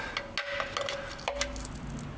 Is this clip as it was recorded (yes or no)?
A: yes